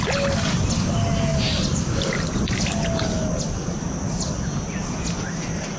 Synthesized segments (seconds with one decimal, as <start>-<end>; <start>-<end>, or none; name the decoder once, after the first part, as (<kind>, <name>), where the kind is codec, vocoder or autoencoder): none